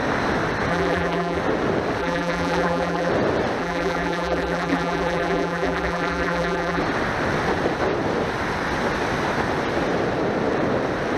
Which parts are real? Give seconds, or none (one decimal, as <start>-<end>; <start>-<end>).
0.0-0.7; 1.4-2.0; 3.1-3.6; 6.8-11.2